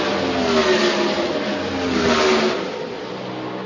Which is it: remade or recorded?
recorded